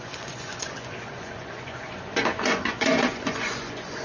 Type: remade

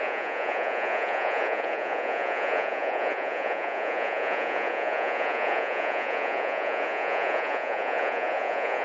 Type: remade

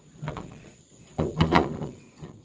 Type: remade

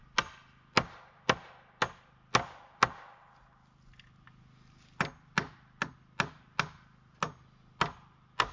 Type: recorded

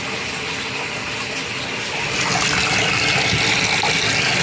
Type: recorded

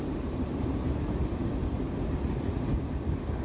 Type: recorded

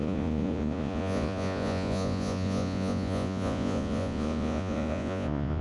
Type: remade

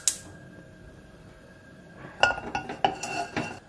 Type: recorded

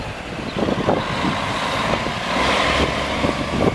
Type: recorded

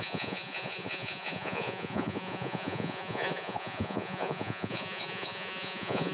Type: remade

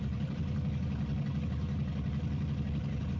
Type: recorded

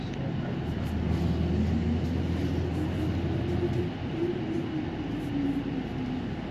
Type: recorded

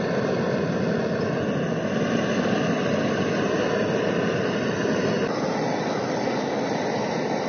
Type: recorded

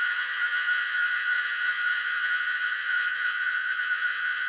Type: remade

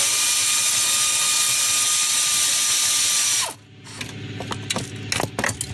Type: recorded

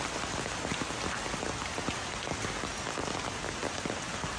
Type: recorded